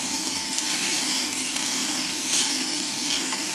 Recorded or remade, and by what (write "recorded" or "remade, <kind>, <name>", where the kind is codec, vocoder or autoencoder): remade, codec, DAC